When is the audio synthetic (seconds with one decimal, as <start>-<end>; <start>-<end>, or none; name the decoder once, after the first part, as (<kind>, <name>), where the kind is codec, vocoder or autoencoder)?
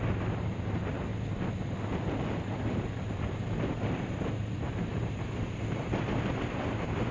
0.0-1.1 (vocoder, BigVGAN v2); 3.0-7.1